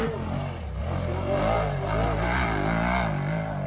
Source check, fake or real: real